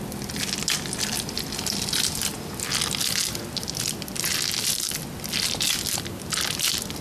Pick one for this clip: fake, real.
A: real